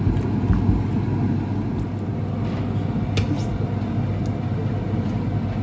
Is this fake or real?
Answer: real